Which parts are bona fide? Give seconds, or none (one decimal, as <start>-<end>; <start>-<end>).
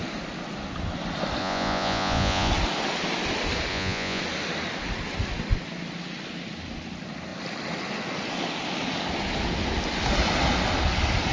0.0-1.4; 2.5-3.7; 4.2-11.3